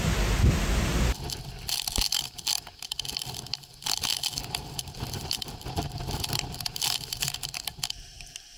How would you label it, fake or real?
real